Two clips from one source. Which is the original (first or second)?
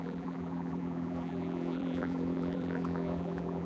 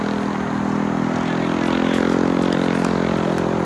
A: second